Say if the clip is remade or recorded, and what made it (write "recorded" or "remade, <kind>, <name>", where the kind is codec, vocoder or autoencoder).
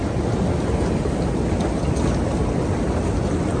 recorded